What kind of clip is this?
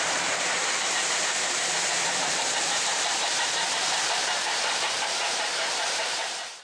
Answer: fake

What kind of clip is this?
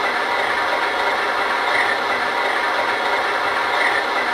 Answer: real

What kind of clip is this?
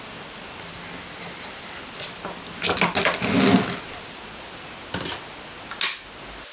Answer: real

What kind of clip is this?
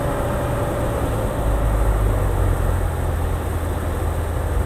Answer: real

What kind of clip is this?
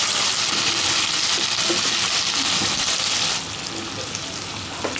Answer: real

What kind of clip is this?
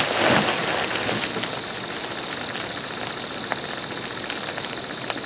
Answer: real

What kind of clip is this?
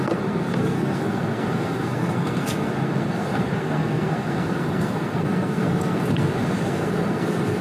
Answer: fake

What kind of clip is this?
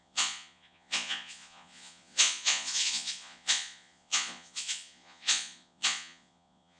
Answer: fake